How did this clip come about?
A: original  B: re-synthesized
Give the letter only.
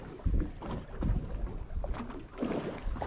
A